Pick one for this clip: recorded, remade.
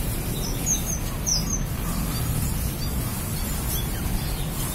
recorded